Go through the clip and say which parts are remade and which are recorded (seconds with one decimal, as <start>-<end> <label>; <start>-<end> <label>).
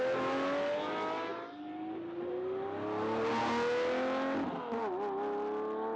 0.0-6.0 recorded